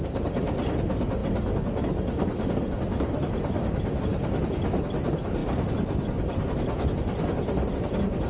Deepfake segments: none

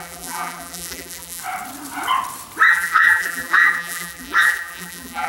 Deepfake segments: 0.0-1.4 (vocoder, BigVGAN v2); 2.7-5.3